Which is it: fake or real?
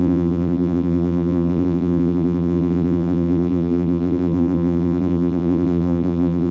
fake